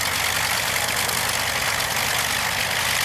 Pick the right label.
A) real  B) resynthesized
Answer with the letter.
A